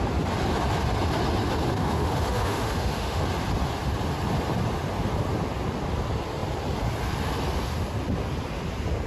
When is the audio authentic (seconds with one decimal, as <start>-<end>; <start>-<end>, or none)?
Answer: 0.0-1.7; 3.2-9.1